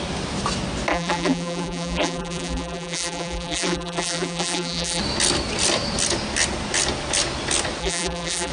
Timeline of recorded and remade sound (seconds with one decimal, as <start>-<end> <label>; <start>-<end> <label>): 0.0-0.9 recorded; 0.9-5.0 remade; 5.0-7.8 recorded; 7.8-8.5 remade